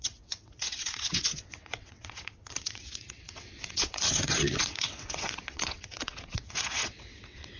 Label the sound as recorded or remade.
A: remade